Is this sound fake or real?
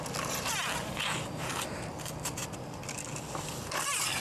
real